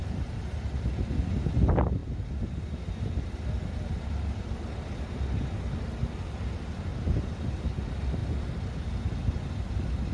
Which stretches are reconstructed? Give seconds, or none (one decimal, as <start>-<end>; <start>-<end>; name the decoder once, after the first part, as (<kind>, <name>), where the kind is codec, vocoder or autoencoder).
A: 0.0-0.9 (vocoder, BigVGAN v2); 6.9-7.7